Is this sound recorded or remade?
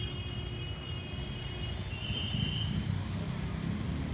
recorded